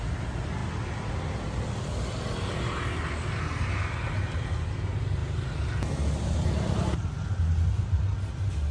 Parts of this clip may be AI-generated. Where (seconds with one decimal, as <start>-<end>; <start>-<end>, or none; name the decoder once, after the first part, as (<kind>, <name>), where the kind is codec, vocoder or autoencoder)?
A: none

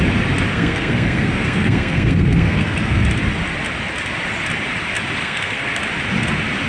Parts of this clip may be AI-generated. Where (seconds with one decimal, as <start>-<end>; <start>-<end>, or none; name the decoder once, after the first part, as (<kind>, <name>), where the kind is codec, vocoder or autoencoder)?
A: 0.5-3.0 (codec, SNAC); 5.2-5.8